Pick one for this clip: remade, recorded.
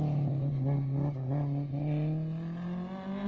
recorded